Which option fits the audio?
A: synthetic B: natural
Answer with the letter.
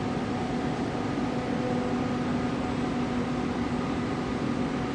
B